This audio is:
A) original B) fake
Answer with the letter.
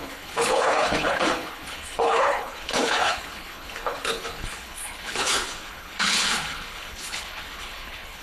B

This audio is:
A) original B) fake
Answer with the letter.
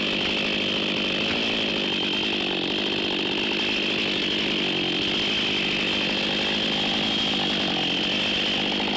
A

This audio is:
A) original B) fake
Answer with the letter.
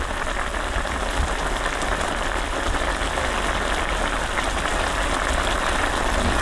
A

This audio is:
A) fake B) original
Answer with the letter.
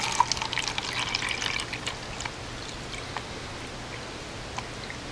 B